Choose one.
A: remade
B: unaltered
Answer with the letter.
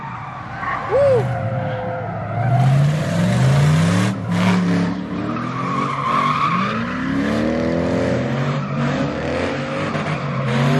B